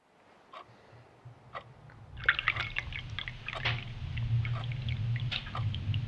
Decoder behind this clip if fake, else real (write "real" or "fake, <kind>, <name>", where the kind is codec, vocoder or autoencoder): real